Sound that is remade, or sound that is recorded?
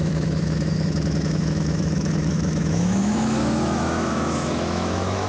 remade